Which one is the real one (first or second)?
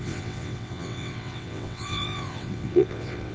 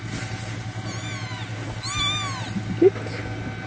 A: second